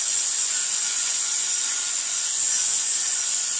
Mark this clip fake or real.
fake